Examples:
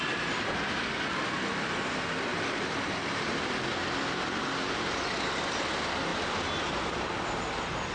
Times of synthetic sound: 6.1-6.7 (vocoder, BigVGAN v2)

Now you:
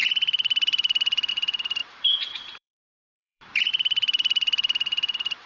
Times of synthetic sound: 0.0-5.5 (vocoder, BigVGAN v2)